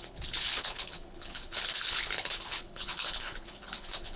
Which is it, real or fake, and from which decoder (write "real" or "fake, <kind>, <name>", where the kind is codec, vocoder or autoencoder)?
fake, codec, HILCodec